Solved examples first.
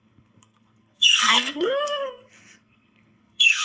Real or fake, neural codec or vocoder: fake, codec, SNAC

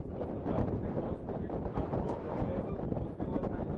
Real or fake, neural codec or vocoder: real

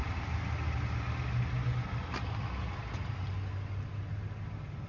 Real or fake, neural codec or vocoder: real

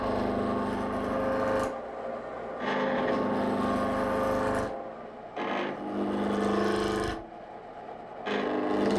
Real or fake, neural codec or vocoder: real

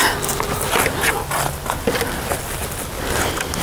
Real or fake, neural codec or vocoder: real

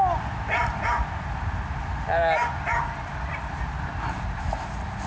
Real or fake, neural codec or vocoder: real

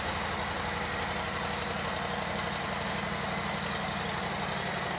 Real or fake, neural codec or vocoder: real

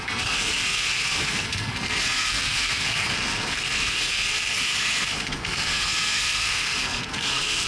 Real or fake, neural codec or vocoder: fake, codec, SNAC